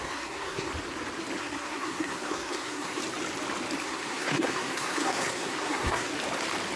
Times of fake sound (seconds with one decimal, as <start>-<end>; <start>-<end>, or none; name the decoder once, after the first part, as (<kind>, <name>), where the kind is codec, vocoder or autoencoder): 0.0-0.7 (codec, SNAC); 1.4-3.0; 3.8-6.1